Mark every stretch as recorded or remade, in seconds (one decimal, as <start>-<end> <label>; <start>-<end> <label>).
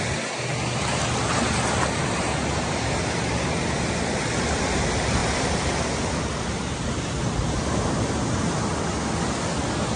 0.0-10.0 recorded